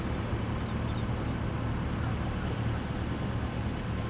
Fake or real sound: real